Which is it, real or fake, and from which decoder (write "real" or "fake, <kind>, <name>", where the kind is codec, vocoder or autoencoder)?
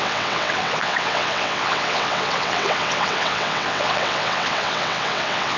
fake, vocoder, WaveNeXt